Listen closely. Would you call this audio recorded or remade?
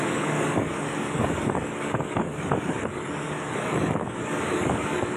remade